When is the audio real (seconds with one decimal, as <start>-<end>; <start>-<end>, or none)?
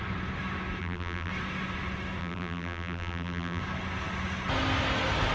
0.0-0.8; 1.3-2.2; 3.6-5.3